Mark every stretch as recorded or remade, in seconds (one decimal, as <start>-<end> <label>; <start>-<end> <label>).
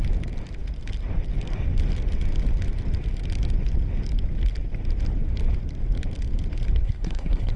0.0-6.8 recorded; 6.8-7.6 remade